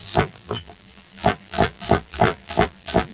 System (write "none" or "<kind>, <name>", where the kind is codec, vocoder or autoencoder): vocoder, BigVGAN v2